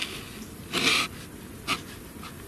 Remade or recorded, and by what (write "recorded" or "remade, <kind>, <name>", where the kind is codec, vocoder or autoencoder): recorded